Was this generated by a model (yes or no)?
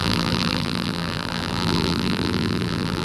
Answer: yes